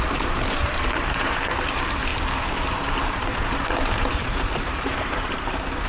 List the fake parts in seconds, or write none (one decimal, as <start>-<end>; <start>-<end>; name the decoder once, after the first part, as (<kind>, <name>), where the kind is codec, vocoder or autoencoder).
0.0-2.1 (vocoder, BigVGAN v2); 3.5-5.9